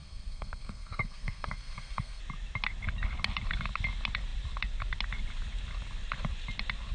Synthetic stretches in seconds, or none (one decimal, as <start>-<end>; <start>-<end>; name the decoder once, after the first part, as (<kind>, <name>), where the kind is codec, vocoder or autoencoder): 0.0-2.2 (codec, SNAC)